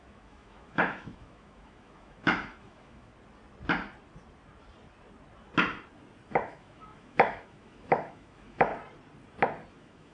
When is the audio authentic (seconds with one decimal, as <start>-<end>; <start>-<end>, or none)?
3.1-6.3; 8.7-9.7